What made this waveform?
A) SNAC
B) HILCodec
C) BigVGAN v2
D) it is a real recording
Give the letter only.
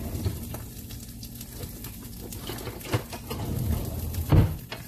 D